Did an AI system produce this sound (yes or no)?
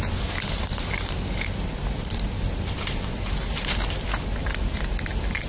no